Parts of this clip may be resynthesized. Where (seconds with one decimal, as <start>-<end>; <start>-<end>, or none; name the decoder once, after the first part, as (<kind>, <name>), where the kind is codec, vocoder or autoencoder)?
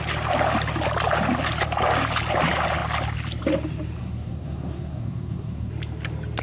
4.0-5.7 (codec, SNAC)